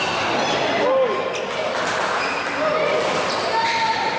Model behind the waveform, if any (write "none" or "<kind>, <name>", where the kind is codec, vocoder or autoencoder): none